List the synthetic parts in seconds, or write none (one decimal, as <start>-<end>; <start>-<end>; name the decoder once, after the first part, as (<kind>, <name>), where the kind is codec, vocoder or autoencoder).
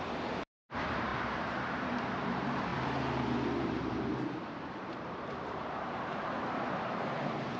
0.0-2.7 (vocoder, BigVGAN v2); 3.6-7.6